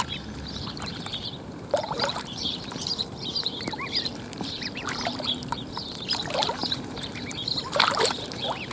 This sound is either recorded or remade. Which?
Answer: remade